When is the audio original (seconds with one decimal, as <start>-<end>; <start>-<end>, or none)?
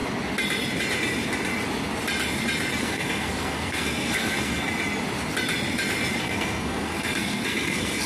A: 0.0-2.8; 4.6-6.2